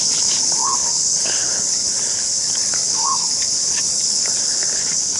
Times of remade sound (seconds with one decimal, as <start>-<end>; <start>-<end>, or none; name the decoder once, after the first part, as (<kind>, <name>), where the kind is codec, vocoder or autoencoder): 0.0-5.2 (codec, HILCodec)